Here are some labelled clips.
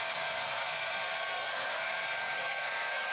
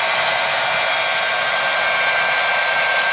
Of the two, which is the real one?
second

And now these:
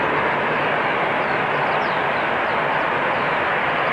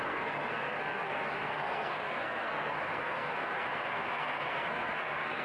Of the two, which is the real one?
first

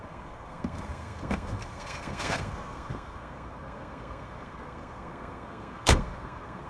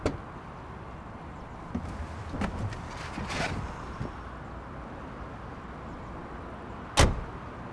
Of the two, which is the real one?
second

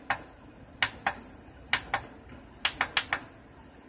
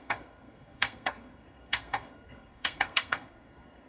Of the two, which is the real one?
first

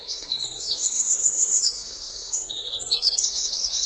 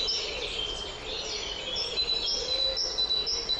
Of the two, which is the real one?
second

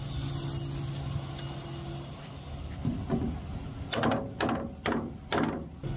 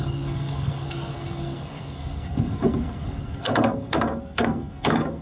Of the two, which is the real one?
first